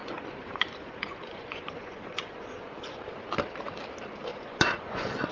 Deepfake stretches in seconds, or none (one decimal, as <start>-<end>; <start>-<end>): 0.0-3.0; 4.3-5.3